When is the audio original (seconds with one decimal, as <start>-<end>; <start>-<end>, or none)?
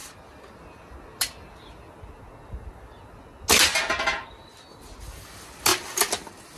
0.0-6.6